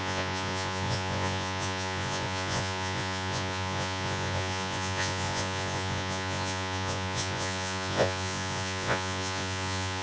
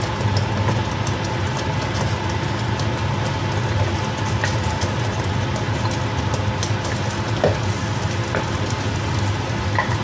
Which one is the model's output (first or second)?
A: first